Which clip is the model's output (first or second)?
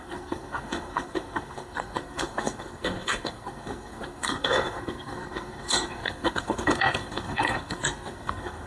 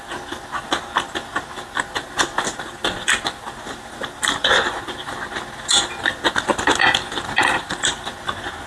first